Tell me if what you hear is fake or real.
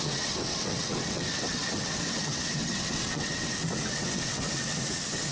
fake